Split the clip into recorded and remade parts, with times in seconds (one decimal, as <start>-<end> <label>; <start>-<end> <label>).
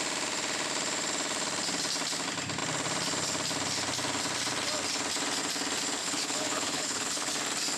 0.0-6.0 recorded; 6.0-7.3 remade; 7.3-7.8 recorded